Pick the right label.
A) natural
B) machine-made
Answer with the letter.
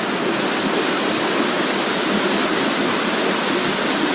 A